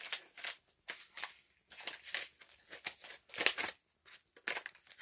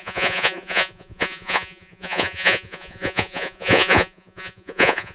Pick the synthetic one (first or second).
second